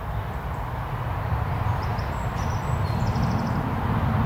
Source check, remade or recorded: recorded